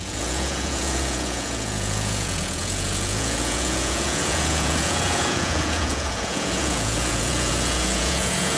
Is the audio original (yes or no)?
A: no